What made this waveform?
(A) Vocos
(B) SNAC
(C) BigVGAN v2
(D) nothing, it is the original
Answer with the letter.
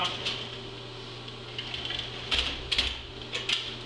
D